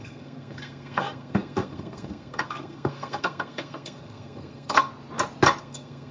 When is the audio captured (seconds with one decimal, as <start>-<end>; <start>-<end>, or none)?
4.9-5.6